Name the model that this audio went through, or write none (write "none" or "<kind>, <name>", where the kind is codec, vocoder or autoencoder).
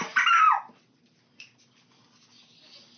none